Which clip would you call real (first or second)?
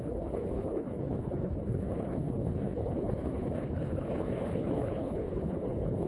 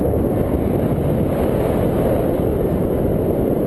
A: second